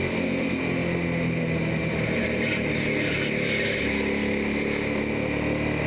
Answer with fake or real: real